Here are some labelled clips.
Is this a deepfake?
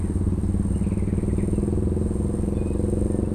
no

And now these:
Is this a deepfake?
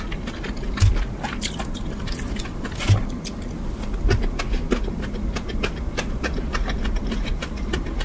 no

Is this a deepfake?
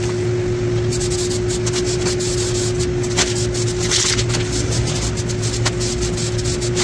no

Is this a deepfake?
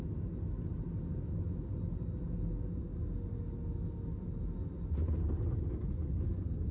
no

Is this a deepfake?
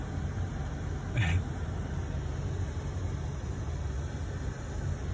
no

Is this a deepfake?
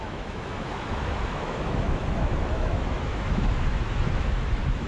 yes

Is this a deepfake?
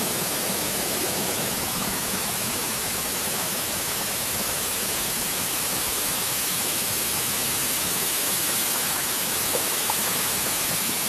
yes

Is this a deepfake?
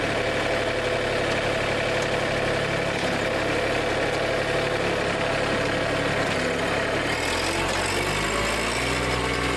no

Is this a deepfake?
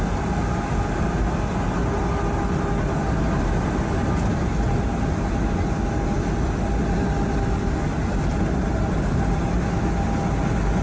no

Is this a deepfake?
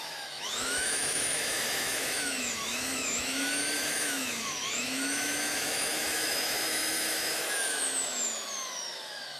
yes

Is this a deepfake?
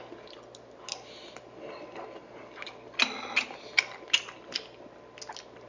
no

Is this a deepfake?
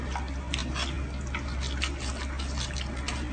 no